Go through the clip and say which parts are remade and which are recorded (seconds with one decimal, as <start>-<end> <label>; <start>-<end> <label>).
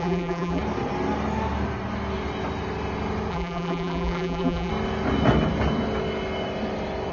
0.0-0.6 remade; 0.6-3.3 recorded; 3.3-4.7 remade; 4.7-7.1 recorded